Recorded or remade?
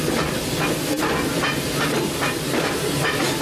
recorded